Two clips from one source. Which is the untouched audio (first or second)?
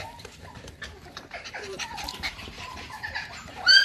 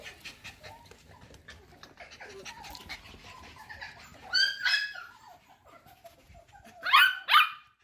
second